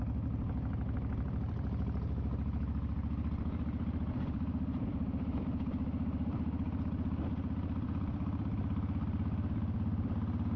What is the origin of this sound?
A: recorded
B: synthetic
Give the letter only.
B